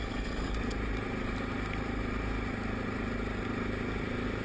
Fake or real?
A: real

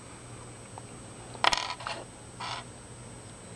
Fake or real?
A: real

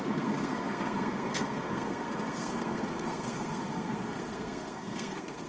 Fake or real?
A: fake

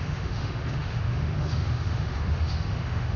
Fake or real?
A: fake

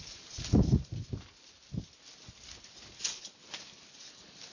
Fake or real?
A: real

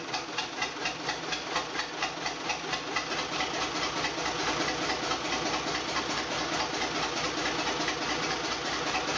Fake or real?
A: real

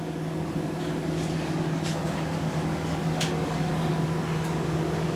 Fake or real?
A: fake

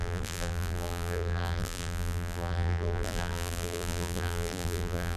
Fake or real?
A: fake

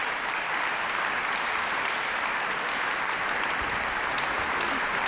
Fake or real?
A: real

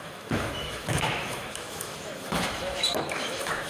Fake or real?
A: fake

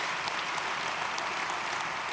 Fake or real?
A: real